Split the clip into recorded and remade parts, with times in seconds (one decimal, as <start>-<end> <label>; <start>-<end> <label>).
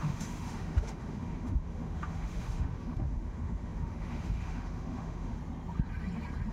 0.0-5.4 remade; 5.4-6.5 recorded